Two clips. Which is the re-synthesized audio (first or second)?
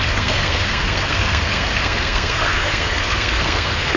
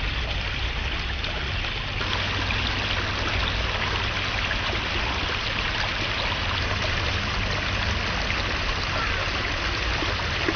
first